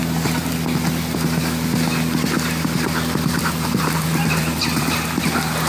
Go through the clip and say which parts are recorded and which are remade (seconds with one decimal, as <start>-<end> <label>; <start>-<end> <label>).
0.0-3.4 recorded; 3.4-5.7 remade